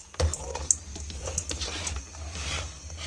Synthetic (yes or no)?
no